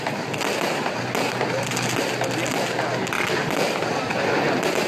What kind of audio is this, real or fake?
real